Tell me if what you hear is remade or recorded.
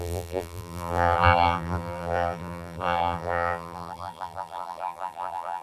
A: remade